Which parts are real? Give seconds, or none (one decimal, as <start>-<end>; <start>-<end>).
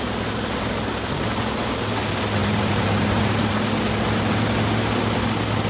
0.0-2.4; 3.5-5.7